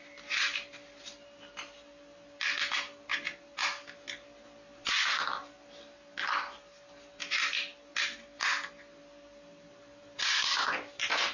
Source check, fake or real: real